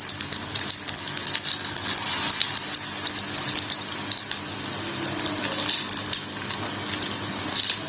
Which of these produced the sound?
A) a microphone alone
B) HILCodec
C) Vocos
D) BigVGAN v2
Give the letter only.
A